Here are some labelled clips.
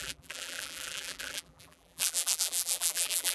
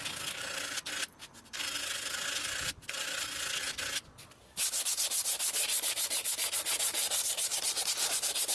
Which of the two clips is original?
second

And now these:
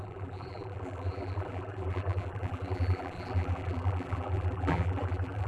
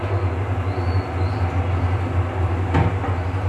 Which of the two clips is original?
second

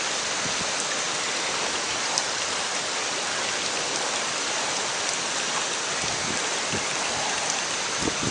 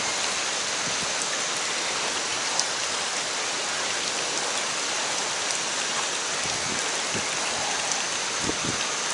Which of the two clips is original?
second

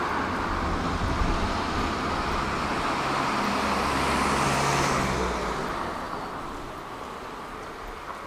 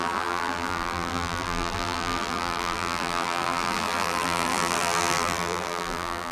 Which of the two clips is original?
first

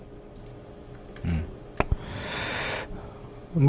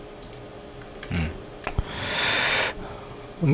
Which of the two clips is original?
first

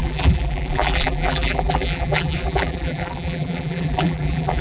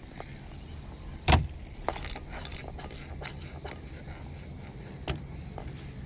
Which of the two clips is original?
second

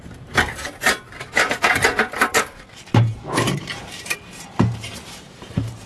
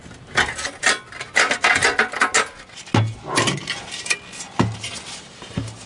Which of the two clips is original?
second